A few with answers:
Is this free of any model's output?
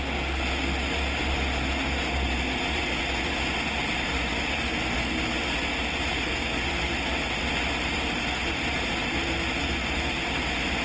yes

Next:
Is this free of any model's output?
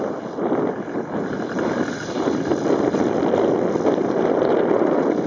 yes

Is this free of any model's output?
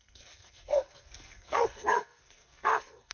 no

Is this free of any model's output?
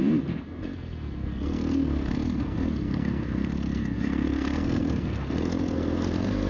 no